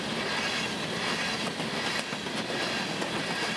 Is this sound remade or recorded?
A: recorded